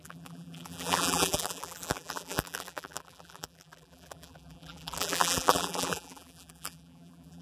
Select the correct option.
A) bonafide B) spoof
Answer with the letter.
B